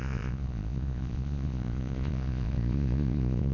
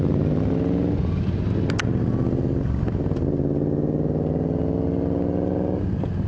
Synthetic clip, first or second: first